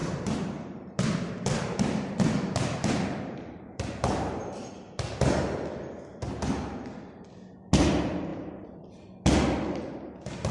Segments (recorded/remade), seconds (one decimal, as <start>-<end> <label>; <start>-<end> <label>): 0.0-4.7 remade; 4.7-10.5 recorded